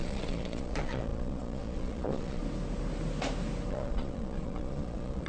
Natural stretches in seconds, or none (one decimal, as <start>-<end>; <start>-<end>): 2.4-3.7